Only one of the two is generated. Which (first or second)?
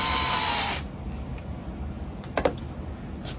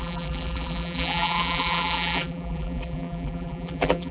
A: second